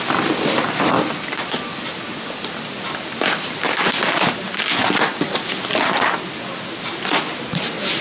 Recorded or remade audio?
recorded